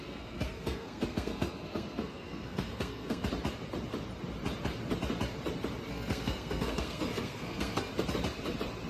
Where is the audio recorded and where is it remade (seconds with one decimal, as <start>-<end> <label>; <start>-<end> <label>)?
0.0-3.2 remade; 3.2-5.9 recorded; 5.9-7.9 remade; 7.9-8.9 recorded